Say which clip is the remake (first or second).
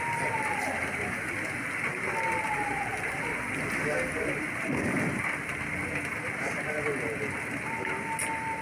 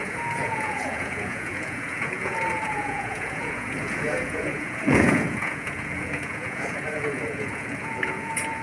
second